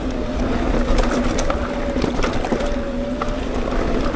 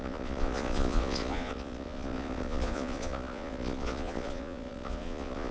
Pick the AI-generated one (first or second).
second